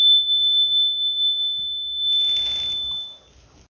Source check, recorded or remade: recorded